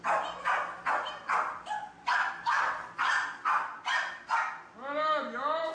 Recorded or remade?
recorded